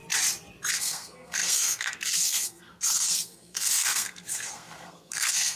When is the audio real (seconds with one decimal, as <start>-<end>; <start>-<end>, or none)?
0.0-0.7